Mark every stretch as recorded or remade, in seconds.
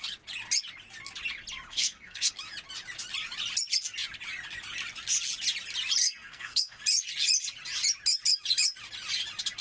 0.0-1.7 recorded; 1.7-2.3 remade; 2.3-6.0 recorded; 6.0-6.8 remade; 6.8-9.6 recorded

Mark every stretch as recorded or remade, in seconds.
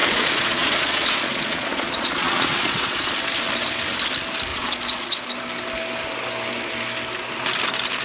0.0-3.1 remade; 3.1-4.5 recorded; 4.5-5.2 remade; 5.2-8.0 recorded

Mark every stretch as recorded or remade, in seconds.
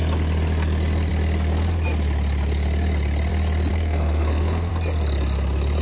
0.0-3.7 recorded; 3.7-4.7 remade; 4.7-5.8 recorded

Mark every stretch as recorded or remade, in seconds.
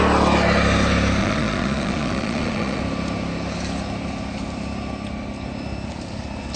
0.0-1.2 recorded; 1.2-2.8 remade; 2.8-6.6 recorded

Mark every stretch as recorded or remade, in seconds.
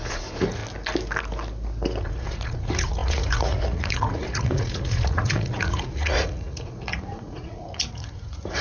0.0-0.6 remade; 0.6-2.0 recorded; 2.0-8.6 remade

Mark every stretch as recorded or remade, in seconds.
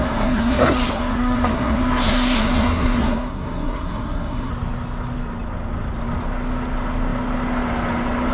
0.0-4.5 remade; 4.5-8.3 recorded